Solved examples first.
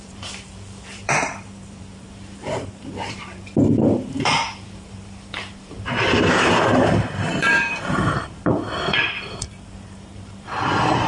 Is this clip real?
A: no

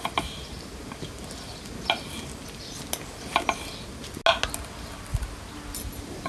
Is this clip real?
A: yes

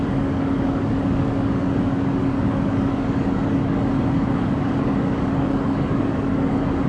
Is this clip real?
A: no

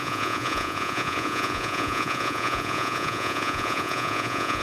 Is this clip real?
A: no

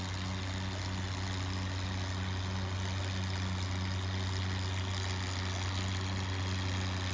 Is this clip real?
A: yes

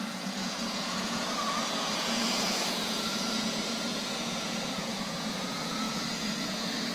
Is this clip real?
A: no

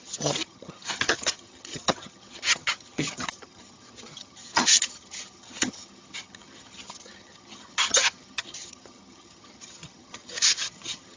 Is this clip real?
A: no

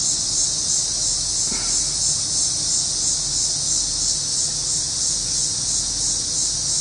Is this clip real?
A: yes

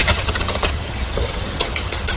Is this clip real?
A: no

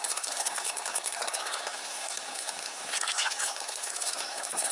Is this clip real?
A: no